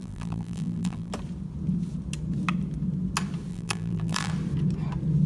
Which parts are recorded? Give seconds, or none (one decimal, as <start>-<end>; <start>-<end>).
1.1-3.5; 4.3-5.3